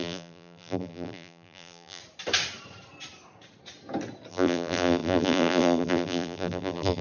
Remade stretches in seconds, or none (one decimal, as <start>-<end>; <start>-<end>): 0.0-2.0; 4.3-7.0